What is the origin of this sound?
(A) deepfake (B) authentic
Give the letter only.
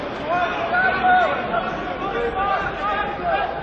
B